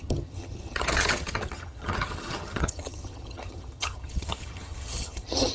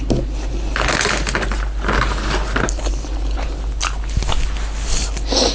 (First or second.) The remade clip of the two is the first